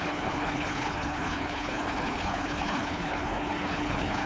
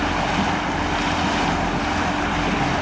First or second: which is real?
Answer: second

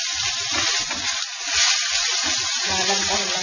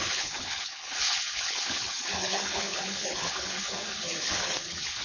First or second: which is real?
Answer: first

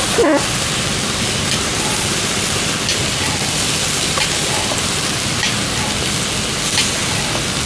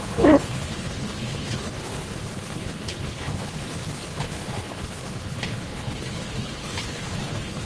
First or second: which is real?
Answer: first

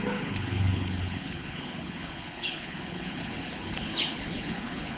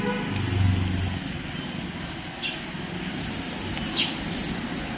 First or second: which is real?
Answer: second